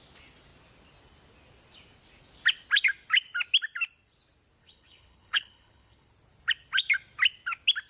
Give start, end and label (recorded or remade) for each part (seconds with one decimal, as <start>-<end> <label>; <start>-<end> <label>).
0.0-4.6 recorded; 4.6-6.1 remade; 6.1-7.9 recorded